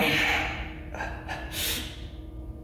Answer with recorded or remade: recorded